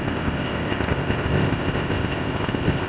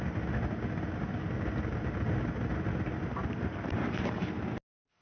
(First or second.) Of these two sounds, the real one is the second